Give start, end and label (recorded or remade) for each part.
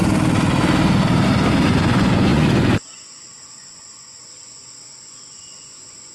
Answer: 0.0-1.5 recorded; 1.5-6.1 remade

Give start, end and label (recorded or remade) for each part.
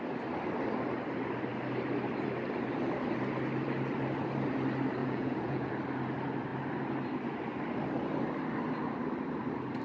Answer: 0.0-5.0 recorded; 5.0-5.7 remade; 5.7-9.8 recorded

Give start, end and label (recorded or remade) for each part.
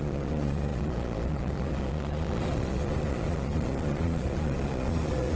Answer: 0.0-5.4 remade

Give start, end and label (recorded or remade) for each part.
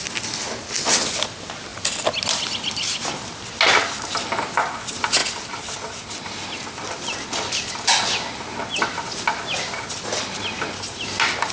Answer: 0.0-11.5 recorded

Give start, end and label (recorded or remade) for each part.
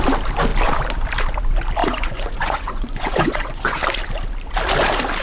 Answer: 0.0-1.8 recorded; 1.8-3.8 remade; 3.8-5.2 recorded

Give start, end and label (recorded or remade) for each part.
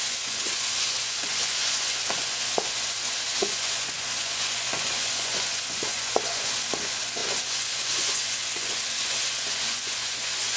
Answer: 0.0-10.6 remade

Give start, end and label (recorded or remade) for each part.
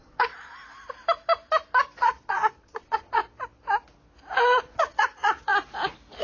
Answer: 0.0-0.6 remade; 0.6-2.0 recorded; 2.0-3.2 remade; 3.2-4.6 recorded; 4.6-5.5 remade; 5.5-6.2 recorded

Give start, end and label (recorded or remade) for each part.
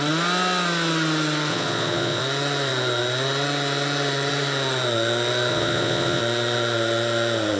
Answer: 0.0-1.5 recorded; 1.5-2.2 remade; 2.2-5.5 recorded; 5.5-6.2 remade; 6.2-7.6 recorded